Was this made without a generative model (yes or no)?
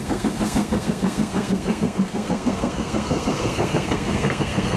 no